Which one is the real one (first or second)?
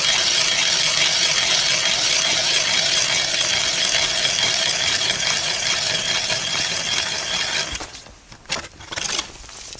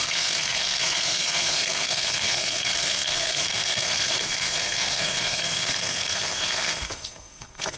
first